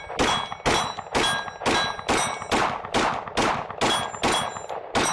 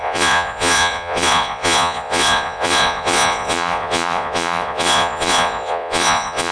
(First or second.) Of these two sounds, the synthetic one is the second